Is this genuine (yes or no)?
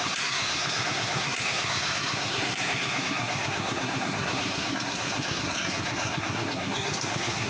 no